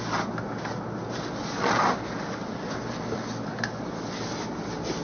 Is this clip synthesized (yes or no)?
no